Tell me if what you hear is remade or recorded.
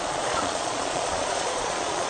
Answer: remade